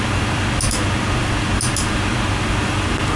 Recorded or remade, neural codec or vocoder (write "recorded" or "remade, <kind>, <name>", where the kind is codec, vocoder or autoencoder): recorded